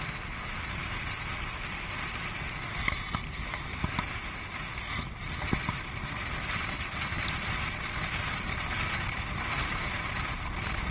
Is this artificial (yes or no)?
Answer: no